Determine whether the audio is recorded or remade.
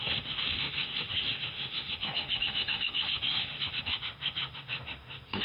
remade